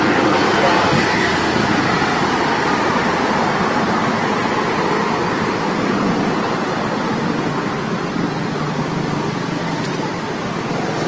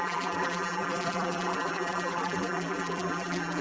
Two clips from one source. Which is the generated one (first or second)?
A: second